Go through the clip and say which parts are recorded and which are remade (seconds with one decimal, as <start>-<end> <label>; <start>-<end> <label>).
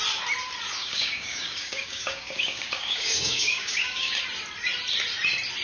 0.0-0.8 recorded; 0.8-4.2 remade; 4.2-5.6 recorded